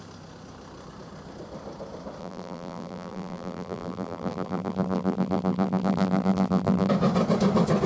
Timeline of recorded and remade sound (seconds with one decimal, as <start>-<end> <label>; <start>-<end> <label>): 0.0-2.2 recorded; 2.2-6.9 remade; 6.9-7.9 recorded